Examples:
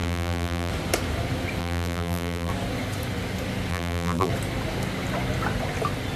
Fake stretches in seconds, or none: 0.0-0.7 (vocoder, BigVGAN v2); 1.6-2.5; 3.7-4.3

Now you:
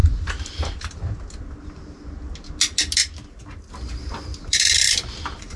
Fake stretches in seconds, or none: 0.0-0.6 (vocoder, BigVGAN v2); 4.3-5.6

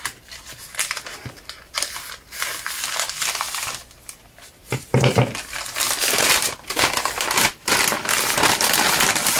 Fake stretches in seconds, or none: 4.6-8.5 (vocoder, BigVGAN v2)

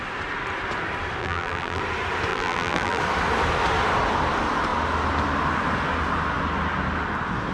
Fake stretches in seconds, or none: 1.2-1.8 (vocoder, BigVGAN v2); 2.3-3.0

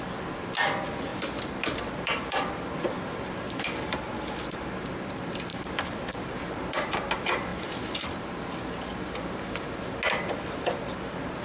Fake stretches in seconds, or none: 1.1-4.4 (vocoder, BigVGAN v2); 5.5-6.9

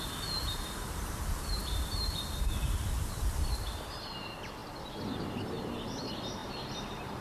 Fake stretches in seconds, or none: 0.4-4.0 (vocoder, BigVGAN v2); 6.4-7.2

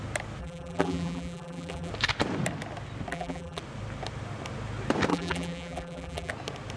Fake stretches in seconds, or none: 0.4-1.9 (vocoder, BigVGAN v2); 3.1-3.6; 5.1-6.3

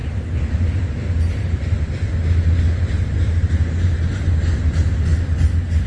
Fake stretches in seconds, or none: 3.5-5.9 (vocoder, BigVGAN v2)